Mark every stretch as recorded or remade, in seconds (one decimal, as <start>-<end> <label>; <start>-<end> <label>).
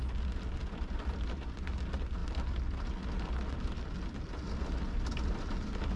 0.0-6.0 recorded